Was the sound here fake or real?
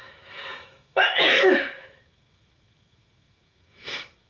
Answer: fake